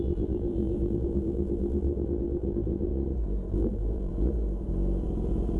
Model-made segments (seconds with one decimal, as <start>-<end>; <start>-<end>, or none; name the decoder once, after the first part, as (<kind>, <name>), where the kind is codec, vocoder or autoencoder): 0.0-2.9 (vocoder, BigVGAN v2); 3.5-4.1